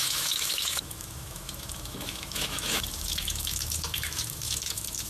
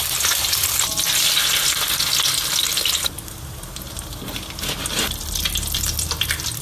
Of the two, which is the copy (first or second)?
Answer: first